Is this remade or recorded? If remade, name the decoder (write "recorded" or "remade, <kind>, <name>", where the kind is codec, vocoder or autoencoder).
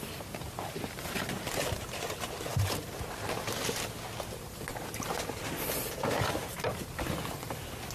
recorded